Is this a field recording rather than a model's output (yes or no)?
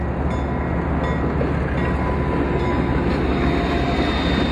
yes